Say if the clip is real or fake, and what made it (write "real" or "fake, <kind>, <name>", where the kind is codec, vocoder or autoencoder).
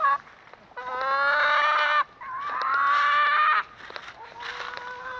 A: real